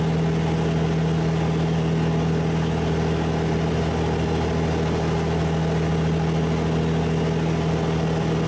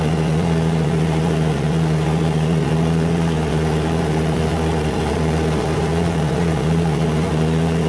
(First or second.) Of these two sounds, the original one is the first